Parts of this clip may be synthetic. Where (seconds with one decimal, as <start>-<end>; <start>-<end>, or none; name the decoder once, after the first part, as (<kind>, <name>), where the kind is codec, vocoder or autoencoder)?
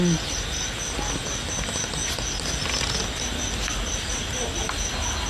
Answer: none